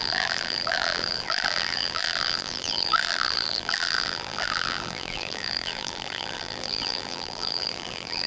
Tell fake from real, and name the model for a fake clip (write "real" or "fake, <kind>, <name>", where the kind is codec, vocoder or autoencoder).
fake, vocoder, BigVGAN v2